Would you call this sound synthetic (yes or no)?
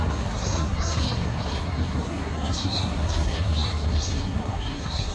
yes